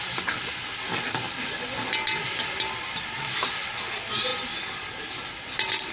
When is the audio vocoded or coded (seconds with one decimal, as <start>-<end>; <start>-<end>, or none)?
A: none